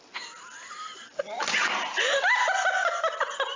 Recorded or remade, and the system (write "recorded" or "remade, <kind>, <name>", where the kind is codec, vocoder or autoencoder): recorded